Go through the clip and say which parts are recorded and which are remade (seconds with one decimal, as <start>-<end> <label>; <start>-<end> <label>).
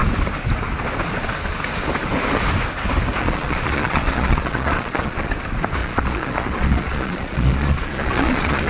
0.0-3.2 recorded; 3.2-5.3 remade; 5.3-5.8 recorded; 5.8-8.7 remade